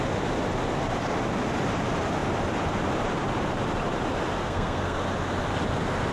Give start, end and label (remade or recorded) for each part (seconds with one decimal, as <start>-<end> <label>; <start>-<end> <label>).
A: 0.0-4.4 recorded; 4.4-5.0 remade; 5.0-6.1 recorded